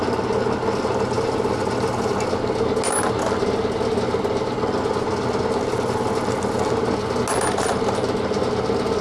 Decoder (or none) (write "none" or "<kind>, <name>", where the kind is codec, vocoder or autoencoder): none